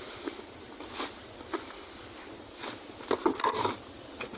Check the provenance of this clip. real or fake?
real